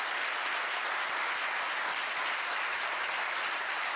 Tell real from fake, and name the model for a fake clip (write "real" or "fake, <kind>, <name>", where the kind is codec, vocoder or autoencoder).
real